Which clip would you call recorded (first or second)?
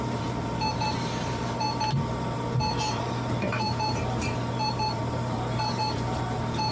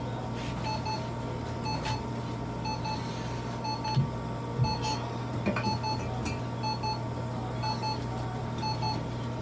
second